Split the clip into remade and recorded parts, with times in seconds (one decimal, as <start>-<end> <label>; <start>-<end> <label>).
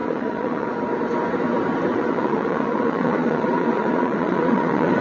0.0-0.7 remade; 0.7-1.9 recorded; 1.9-5.0 remade